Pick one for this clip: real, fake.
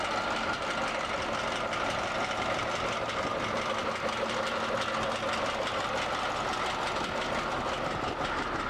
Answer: real